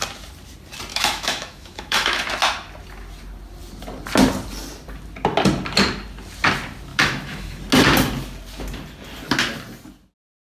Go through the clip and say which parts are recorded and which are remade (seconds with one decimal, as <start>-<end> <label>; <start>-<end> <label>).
0.0-0.9 recorded; 0.9-2.3 remade; 2.3-6.9 recorded; 6.9-7.6 remade; 7.6-10.6 recorded